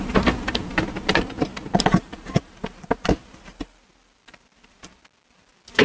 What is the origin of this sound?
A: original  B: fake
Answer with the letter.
A